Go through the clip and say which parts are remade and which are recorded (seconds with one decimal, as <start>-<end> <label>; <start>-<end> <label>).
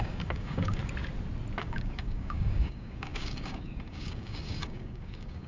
0.0-0.8 remade; 0.8-1.6 recorded; 1.6-5.5 remade